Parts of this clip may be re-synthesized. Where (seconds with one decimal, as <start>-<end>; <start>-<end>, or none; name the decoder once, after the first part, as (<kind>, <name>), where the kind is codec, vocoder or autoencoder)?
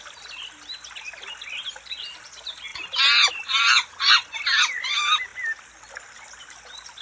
none